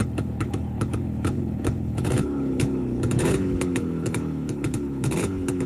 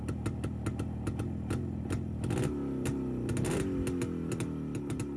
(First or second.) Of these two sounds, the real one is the second